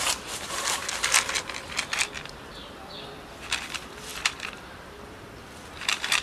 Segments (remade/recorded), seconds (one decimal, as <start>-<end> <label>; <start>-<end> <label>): 0.0-2.5 remade; 2.5-3.4 recorded; 3.4-6.2 remade